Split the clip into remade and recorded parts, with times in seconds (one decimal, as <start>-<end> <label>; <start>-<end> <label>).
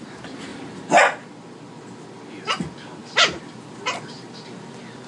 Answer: 0.0-5.1 recorded